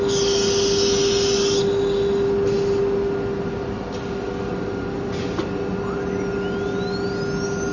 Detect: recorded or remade recorded